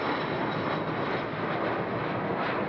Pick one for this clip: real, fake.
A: real